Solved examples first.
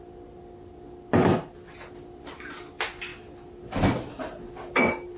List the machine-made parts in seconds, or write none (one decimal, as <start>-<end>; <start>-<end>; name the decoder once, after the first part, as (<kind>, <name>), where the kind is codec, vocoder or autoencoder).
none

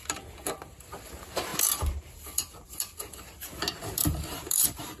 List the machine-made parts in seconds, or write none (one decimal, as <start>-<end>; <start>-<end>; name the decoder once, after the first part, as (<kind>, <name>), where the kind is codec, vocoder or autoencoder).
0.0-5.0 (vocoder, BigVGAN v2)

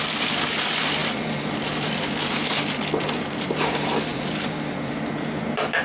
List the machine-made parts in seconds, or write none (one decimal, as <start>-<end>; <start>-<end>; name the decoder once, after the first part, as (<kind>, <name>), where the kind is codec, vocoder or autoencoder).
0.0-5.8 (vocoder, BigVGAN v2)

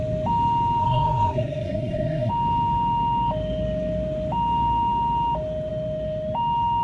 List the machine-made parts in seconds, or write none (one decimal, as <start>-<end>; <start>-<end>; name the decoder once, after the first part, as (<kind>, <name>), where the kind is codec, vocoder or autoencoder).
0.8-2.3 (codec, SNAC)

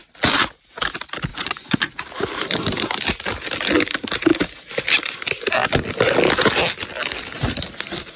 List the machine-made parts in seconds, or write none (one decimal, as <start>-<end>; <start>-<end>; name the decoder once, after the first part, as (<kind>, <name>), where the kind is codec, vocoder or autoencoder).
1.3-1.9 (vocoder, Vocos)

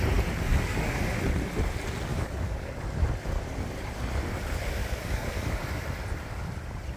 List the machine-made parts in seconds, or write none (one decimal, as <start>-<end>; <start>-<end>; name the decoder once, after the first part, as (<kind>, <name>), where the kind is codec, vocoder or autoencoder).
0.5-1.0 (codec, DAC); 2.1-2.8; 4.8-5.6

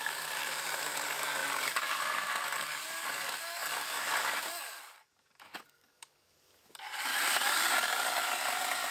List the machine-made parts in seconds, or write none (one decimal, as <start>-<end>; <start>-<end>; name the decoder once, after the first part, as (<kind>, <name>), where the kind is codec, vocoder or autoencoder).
0.0-7.1 (codec, DAC); 7.7-8.9